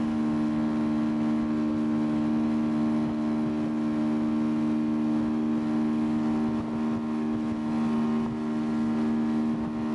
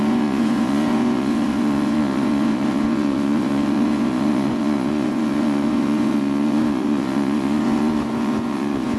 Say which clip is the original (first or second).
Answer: first